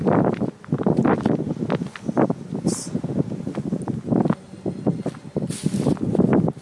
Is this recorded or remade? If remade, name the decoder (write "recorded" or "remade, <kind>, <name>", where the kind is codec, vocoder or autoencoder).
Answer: recorded